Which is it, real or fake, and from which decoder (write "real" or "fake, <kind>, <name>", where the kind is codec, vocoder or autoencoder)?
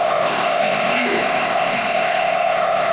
fake, codec, ZipCodec